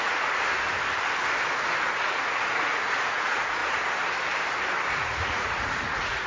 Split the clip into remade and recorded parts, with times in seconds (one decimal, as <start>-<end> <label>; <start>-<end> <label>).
0.0-0.5 remade; 0.5-1.9 recorded; 1.9-3.6 remade; 3.6-4.9 recorded; 4.9-6.3 remade